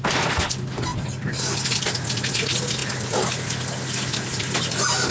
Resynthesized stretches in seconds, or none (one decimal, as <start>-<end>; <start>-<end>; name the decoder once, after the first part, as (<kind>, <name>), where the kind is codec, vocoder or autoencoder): none

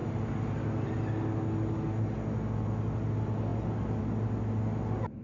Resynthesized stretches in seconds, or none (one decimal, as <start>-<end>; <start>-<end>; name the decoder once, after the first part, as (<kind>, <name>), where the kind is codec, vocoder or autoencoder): none